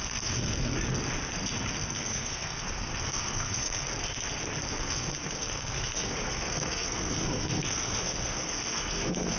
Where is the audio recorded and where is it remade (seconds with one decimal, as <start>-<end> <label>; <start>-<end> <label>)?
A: 0.0-0.8 remade; 0.8-1.9 recorded; 1.9-3.9 remade; 3.9-4.7 recorded; 4.7-9.4 remade